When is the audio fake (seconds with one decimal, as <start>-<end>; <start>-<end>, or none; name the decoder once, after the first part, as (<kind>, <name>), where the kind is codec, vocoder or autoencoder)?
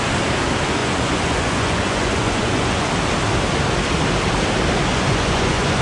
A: 0.8-2.9 (vocoder, Vocos); 4.9-5.8